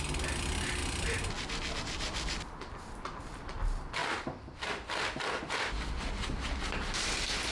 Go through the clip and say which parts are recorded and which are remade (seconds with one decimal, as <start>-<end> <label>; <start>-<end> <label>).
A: 0.0-7.5 recorded